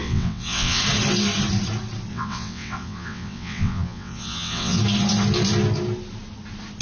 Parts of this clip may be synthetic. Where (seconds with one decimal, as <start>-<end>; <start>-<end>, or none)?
0.0-0.8; 2.1-4.8

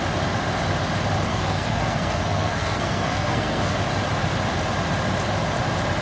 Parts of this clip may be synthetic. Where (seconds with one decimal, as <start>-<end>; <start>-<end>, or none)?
1.3-3.8

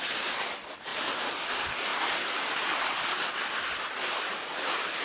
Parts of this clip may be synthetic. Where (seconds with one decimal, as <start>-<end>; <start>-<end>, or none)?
0.0-0.9; 1.5-5.0

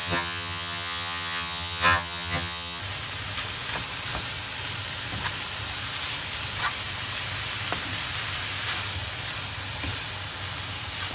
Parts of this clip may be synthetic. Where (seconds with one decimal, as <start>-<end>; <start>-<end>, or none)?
0.0-2.8

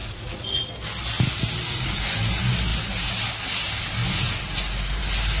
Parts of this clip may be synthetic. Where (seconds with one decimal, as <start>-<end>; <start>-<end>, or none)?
0.0-0.6

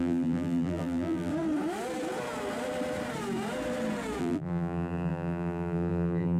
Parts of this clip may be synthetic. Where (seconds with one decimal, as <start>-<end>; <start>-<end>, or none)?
0.0-1.3; 4.2-6.4

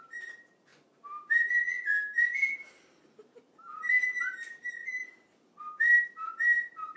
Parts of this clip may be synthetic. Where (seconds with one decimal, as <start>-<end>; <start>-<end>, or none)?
none

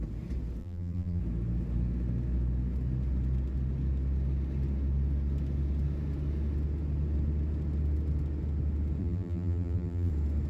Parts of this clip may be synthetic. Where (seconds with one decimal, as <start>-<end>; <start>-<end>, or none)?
0.6-1.2; 9.0-10.1